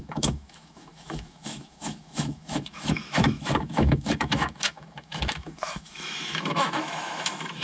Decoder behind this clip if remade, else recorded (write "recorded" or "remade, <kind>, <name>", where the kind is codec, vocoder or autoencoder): remade, autoencoder, DAC-VAE